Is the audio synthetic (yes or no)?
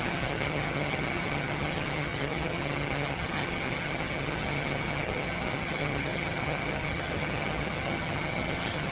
yes